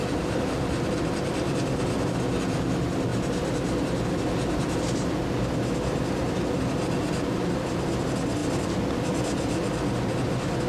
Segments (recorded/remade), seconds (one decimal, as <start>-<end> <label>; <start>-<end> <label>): 0.0-10.7 recorded